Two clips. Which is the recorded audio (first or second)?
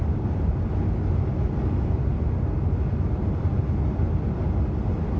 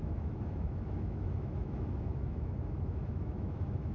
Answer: first